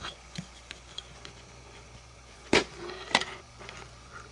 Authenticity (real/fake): fake